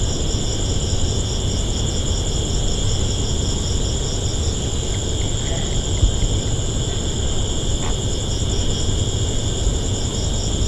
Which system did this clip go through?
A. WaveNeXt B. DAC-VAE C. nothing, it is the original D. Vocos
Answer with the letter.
C